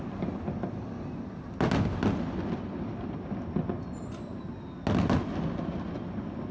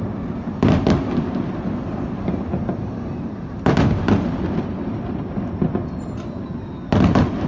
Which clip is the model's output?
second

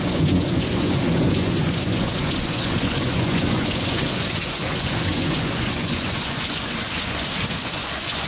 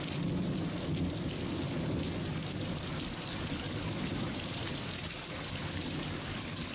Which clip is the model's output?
first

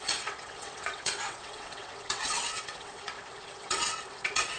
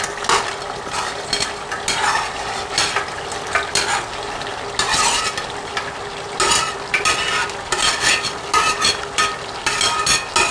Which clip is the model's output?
first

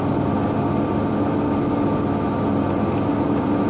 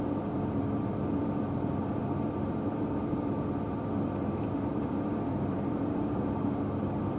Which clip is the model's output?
second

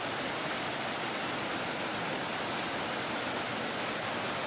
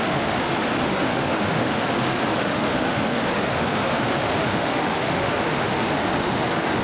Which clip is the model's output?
second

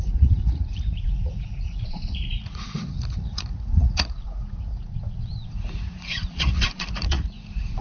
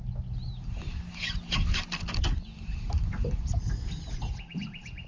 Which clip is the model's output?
first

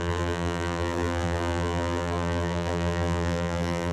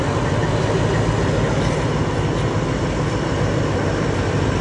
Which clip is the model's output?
first